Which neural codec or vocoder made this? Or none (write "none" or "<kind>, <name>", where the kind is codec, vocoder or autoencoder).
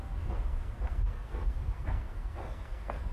codec, SNAC